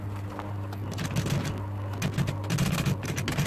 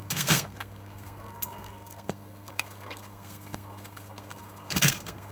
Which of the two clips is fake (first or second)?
second